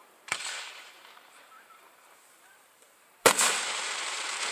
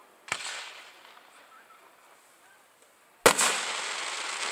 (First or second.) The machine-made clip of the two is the first